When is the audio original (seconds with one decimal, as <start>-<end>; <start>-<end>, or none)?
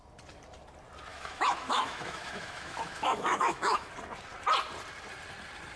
0.0-1.1; 3.9-5.8